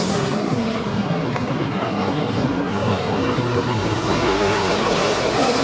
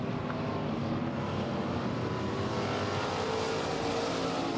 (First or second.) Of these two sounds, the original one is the second